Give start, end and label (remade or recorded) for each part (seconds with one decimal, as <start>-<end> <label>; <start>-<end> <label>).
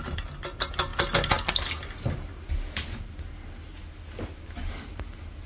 0.0-5.5 recorded